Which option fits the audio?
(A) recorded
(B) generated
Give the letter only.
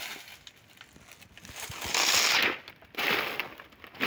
A